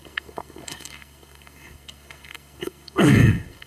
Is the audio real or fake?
fake